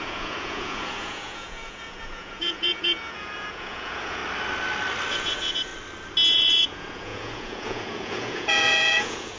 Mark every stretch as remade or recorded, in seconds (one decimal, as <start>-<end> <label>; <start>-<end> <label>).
0.0-4.2 remade; 4.2-5.1 recorded; 5.1-5.7 remade; 5.7-6.3 recorded; 6.3-9.4 remade